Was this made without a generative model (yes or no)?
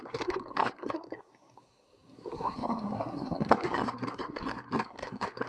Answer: no